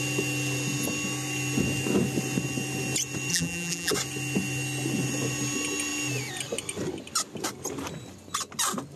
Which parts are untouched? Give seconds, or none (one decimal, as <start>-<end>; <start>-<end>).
0.0-3.3; 3.9-9.0